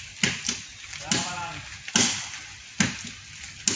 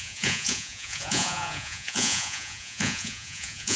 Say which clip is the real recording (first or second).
first